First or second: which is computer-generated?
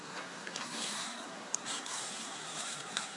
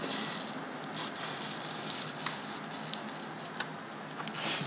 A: first